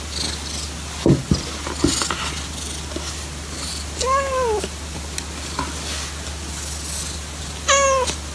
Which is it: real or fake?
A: real